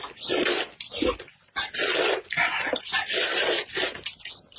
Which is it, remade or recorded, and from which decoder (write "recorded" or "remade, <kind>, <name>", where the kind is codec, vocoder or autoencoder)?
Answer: recorded